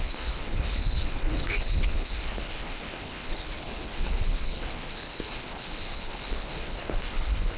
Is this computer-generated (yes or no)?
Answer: yes